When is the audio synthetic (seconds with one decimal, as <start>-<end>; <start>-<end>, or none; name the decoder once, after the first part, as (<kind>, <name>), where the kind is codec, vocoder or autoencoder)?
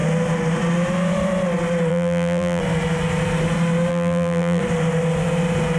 1.9-2.6 (vocoder, BigVGAN v2); 3.9-4.6